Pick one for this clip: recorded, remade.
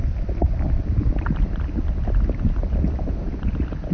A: recorded